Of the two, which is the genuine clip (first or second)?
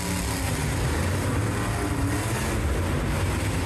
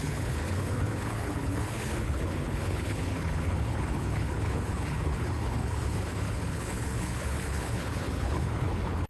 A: first